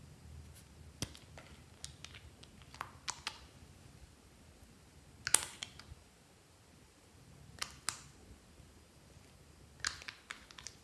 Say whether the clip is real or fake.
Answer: real